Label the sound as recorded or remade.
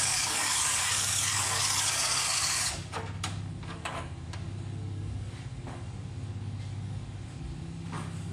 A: remade